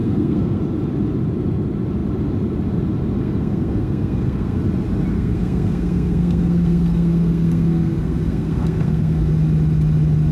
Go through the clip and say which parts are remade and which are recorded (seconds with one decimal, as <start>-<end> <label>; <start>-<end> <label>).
0.0-0.6 remade; 0.6-3.2 recorded; 3.2-4.6 remade; 4.6-5.1 recorded; 5.1-9.3 remade; 9.3-10.3 recorded